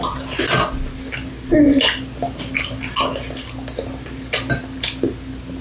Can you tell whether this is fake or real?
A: real